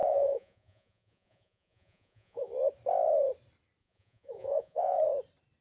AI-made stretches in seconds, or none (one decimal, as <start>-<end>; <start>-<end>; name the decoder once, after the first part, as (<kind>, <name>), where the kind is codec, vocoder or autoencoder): 0.0-2.5 (vocoder, Vocos); 3.8-5.0